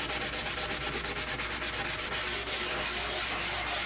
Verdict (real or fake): real